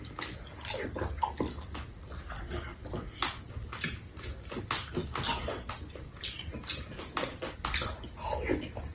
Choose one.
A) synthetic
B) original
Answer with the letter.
B